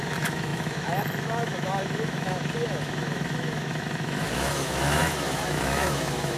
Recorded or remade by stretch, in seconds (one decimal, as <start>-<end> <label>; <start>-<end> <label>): 0.0-6.4 remade